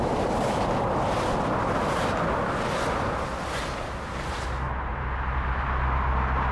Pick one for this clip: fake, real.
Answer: real